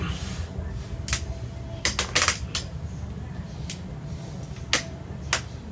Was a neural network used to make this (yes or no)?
no